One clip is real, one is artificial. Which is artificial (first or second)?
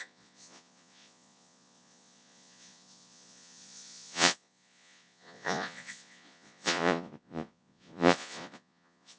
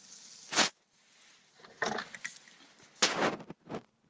first